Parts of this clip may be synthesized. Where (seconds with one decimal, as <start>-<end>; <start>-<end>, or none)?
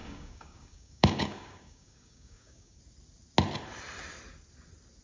0.0-2.8